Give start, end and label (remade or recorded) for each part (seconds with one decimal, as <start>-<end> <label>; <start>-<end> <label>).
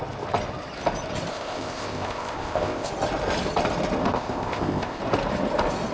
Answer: 0.0-1.3 recorded; 1.3-2.9 remade; 2.9-4.0 recorded; 4.0-5.0 remade; 5.0-5.9 recorded